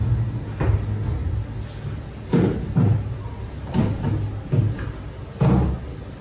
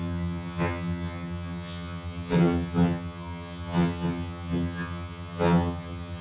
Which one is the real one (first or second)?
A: first